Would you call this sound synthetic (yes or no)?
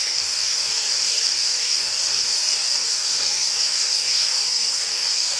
yes